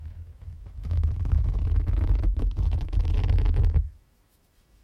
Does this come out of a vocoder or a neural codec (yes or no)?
yes